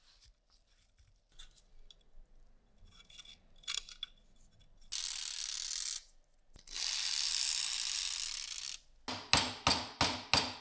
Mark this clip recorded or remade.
recorded